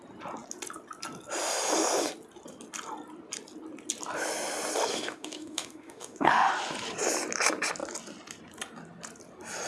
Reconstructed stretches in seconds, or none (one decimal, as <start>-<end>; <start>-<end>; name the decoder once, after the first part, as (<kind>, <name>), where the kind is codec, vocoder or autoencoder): 4.9-6.5 (autoencoder, DAC-VAE)